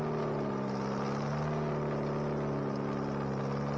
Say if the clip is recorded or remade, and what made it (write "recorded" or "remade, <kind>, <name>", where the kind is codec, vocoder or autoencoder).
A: recorded